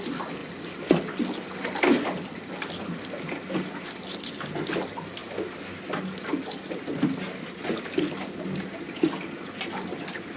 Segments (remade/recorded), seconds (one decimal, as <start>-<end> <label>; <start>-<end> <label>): 0.0-10.4 recorded